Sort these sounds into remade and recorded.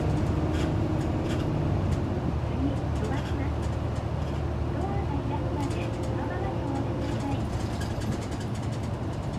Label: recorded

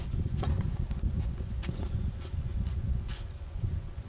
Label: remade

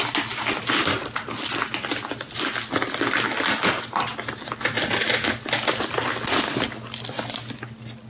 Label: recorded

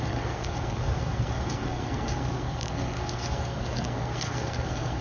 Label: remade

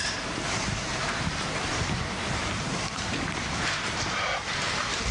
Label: remade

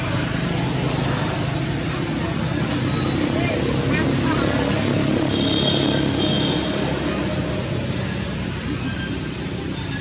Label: recorded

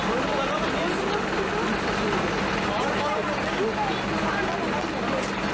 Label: recorded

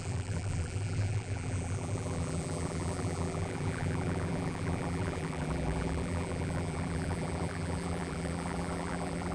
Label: remade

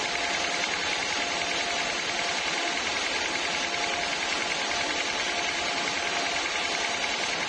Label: recorded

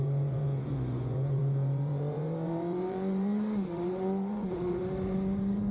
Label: remade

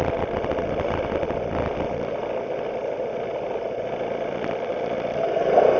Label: recorded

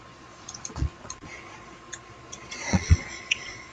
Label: remade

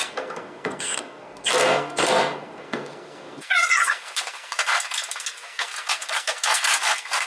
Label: remade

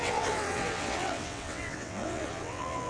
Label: remade